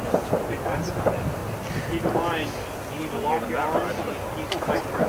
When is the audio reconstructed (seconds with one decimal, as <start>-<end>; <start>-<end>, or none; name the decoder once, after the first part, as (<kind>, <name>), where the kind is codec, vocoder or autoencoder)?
none